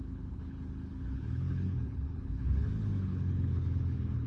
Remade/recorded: remade